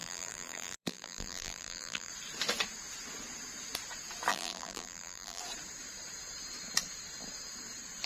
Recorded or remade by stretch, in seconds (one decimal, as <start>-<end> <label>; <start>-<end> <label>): 0.0-2.1 remade; 2.1-4.3 recorded; 4.3-5.4 remade; 5.4-8.1 recorded